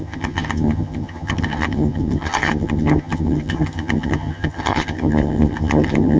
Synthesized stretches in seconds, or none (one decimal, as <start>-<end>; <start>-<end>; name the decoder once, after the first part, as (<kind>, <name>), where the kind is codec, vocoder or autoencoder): 0.0-6.2 (vocoder, HiFi-GAN)